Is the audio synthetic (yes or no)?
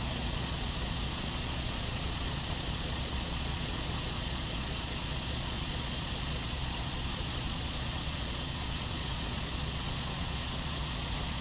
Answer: yes